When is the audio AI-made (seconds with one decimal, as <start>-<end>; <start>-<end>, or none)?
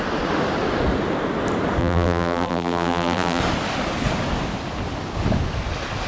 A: 1.8-3.4